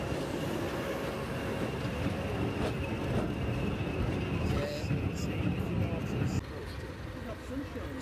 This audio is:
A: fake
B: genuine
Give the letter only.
B